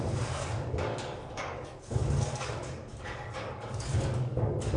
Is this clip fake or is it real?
fake